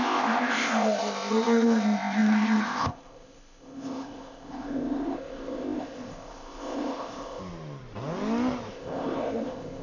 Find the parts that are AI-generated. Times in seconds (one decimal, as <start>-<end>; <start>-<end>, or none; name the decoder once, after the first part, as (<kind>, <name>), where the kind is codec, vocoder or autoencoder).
0.0-7.4 (codec, ZipCodec); 8.7-9.8